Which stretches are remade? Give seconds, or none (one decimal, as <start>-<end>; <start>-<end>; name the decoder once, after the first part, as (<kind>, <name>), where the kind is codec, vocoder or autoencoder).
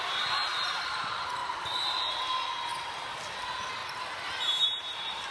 none